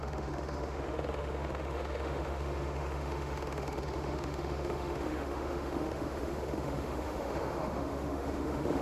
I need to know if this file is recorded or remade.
remade